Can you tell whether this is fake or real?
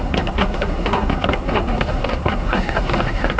fake